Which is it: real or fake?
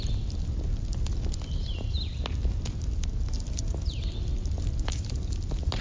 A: real